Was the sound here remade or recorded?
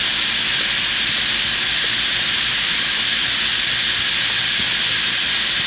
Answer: recorded